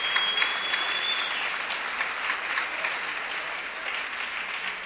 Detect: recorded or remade recorded